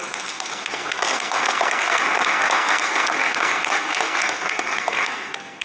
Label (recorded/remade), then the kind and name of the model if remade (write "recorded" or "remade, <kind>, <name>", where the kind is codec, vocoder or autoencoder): remade, codec, SNAC